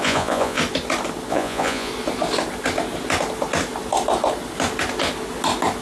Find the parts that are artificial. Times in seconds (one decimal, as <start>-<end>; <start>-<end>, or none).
0.0-0.6; 1.3-1.9